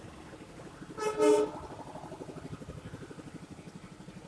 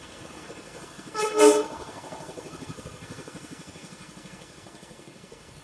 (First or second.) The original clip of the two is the first